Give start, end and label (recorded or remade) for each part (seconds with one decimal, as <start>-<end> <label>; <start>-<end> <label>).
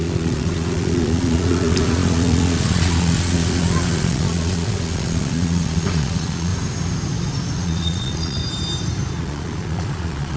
0.0-6.5 remade; 6.5-7.6 recorded; 7.6-8.4 remade; 8.4-9.2 recorded; 9.2-10.4 remade